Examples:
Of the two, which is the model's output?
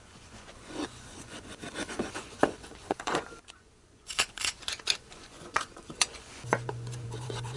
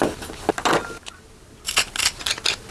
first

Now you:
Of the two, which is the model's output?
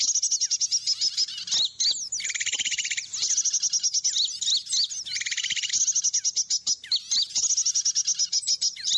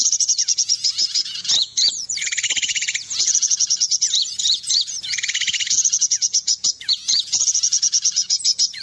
second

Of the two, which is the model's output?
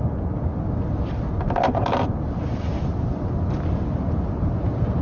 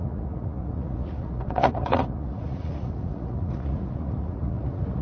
second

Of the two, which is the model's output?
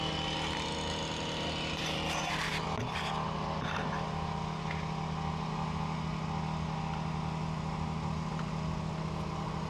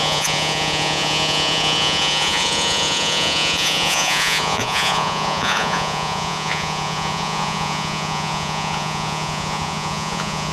second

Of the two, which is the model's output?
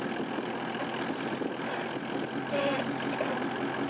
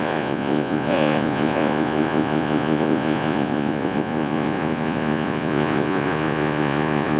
second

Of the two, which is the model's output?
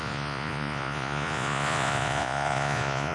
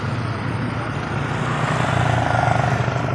first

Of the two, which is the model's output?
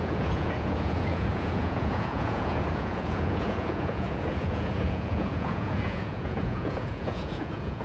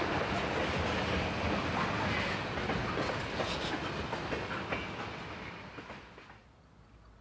first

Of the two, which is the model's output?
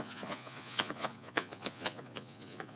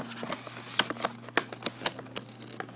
first